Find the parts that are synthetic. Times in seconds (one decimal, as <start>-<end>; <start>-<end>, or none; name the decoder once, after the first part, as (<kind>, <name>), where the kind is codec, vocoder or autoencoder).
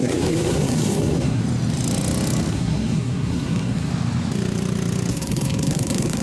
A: 0.0-1.4 (codec, SNAC); 2.5-3.9; 5.1-6.2